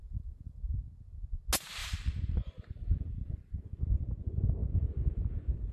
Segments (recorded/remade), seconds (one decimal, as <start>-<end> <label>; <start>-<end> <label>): 0.0-0.6 remade; 0.6-1.8 recorded; 1.8-3.8 remade; 3.8-5.7 recorded